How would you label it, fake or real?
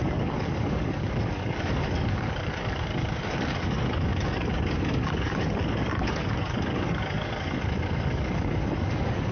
fake